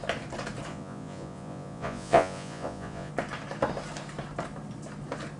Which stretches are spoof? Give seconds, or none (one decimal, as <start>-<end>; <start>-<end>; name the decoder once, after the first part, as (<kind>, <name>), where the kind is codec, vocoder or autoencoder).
0.7-3.1 (vocoder, Vocos)